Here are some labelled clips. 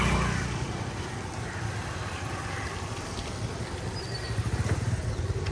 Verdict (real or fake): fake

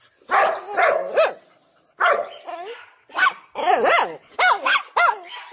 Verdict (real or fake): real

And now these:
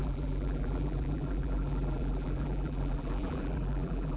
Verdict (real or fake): fake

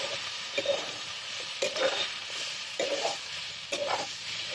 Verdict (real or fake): fake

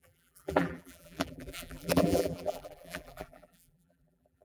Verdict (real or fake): fake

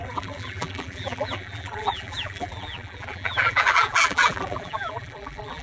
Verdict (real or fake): fake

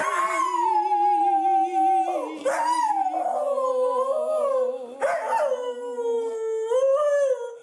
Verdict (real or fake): real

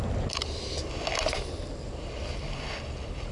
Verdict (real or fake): real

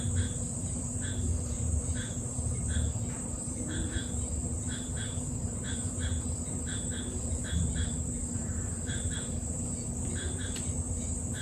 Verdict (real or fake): fake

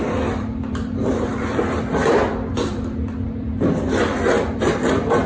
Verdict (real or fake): fake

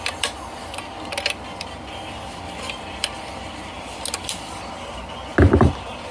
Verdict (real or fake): real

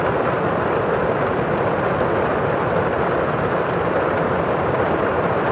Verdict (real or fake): real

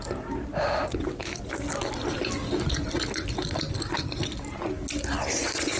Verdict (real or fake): real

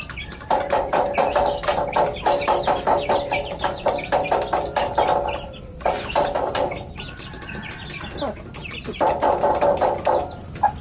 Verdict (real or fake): real